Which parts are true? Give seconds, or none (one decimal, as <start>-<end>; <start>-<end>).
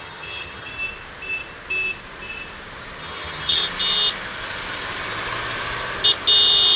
0.7-3.0; 3.6-6.8